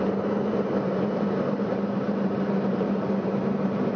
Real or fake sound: fake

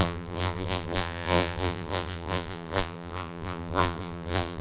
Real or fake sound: fake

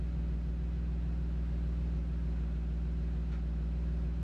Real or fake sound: real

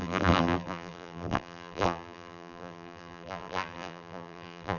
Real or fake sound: fake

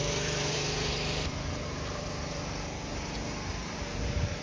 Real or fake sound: fake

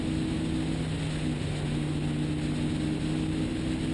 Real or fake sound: real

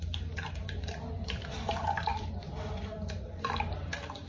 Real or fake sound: fake